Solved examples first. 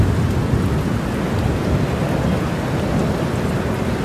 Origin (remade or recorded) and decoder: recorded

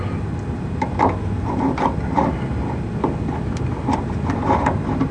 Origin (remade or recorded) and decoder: remade, vocoder, BigVGAN v2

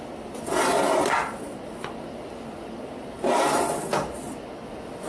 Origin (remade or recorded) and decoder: recorded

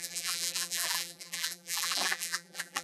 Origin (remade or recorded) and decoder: remade, vocoder, BigVGAN v2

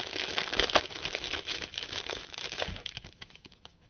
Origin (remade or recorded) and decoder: remade, autoencoder, DAC-VAE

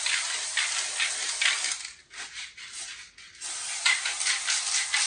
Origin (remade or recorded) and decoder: recorded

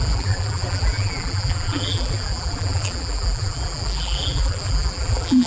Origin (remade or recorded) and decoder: remade, vocoder, BigVGAN v2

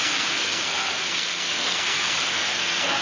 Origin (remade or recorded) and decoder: remade, codec, SNAC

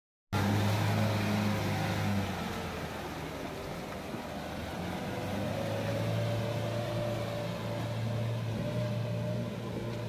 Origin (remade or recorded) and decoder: recorded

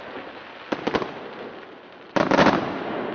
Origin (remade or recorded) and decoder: recorded